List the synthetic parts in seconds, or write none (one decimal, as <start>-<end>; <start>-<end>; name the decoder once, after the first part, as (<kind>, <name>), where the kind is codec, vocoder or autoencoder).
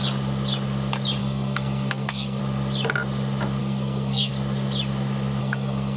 1.2-2.4 (codec, SNAC); 3.6-4.3; 5.4-6.0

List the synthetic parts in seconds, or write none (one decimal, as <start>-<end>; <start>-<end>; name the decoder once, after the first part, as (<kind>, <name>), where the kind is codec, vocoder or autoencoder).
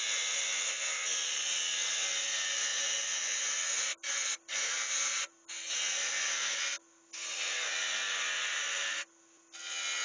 none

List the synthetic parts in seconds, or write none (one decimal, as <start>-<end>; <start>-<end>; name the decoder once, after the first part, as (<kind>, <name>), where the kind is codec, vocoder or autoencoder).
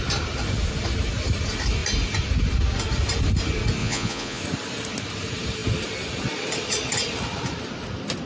3.8-4.4 (vocoder, Vocos)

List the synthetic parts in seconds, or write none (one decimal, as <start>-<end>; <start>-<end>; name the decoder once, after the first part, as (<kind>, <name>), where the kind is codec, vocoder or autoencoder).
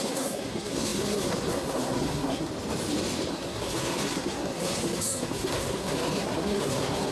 0.0-2.5 (codec, SNAC); 3.3-7.1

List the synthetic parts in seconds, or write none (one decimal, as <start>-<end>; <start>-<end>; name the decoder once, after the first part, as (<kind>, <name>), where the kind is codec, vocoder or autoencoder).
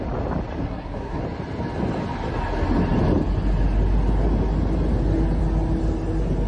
0.6-1.2 (codec, SNAC)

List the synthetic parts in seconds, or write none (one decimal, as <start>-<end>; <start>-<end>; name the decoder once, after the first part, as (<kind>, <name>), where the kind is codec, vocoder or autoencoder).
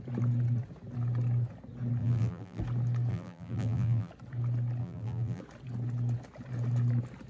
2.0-2.6 (vocoder, BigVGAN v2); 3.1-4.1; 4.8-5.4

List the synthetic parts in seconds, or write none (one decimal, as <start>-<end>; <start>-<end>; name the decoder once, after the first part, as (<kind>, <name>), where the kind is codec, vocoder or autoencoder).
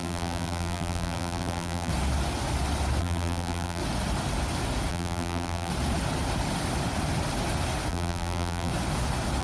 0.0-1.9 (vocoder, BigVGAN v2); 3.0-3.8; 4.9-5.7; 7.9-8.7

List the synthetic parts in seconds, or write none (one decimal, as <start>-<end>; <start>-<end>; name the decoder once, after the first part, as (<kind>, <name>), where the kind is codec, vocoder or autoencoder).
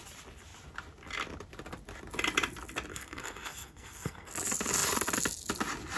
2.9-4.3 (codec, SNAC)